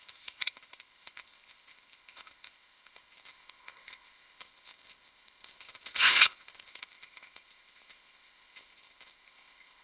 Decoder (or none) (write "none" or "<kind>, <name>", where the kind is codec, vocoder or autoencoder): codec, ZipCodec